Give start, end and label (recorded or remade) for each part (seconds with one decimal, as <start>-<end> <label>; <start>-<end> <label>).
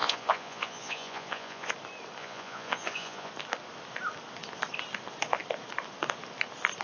0.0-1.7 remade; 1.7-2.2 recorded; 2.2-3.3 remade; 3.3-6.8 recorded